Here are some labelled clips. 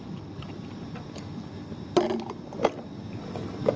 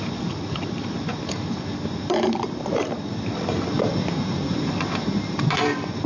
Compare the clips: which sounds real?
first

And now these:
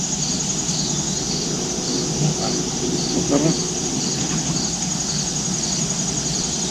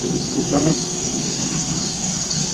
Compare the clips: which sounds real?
first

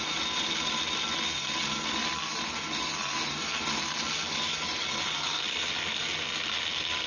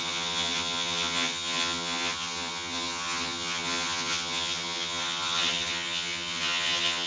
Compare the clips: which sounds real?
first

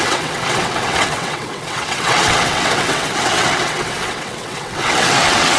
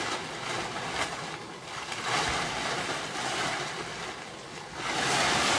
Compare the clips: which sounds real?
second